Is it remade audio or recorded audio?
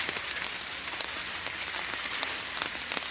recorded